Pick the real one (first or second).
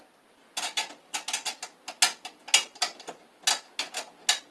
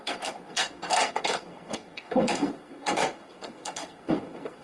first